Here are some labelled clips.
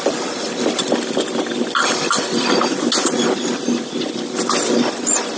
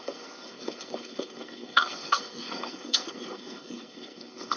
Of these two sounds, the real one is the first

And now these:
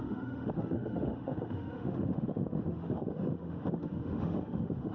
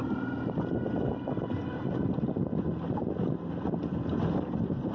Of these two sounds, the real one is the second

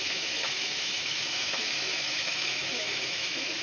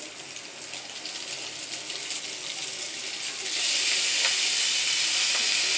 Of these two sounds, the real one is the second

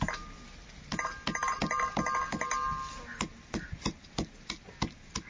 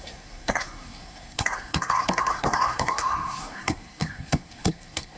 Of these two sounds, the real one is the first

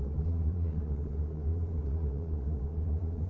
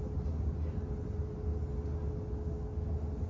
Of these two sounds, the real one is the second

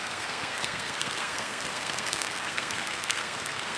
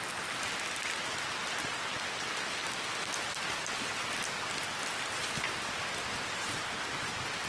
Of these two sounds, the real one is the second